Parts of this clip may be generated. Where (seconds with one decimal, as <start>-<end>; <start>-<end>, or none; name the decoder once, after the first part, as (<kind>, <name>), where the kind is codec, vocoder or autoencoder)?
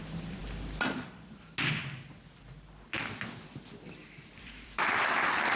4.0-4.8 (vocoder, BigVGAN v2)